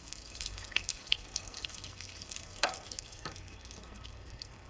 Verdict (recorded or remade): remade